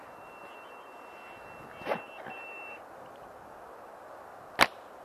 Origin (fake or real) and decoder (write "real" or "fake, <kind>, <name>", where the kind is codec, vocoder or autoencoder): real